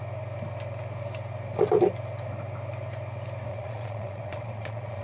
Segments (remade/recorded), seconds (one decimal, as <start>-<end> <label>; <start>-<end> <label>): 0.0-3.5 recorded; 3.5-5.0 remade